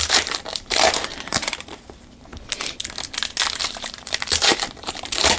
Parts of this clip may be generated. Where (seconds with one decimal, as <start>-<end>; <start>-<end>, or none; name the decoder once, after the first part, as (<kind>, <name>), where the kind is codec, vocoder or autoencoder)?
0.0-2.3 (vocoder, BigVGAN v2); 3.6-5.4